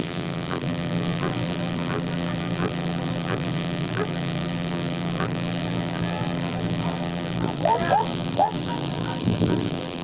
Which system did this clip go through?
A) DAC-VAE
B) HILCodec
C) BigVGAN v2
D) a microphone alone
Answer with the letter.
C